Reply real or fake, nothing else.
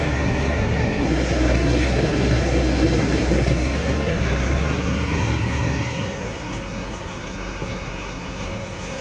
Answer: fake